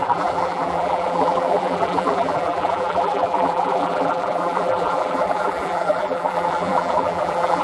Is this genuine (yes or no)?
no